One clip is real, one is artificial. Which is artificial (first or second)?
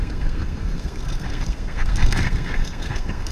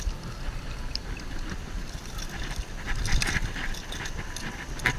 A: first